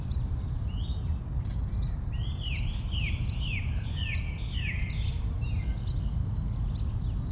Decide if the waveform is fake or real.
real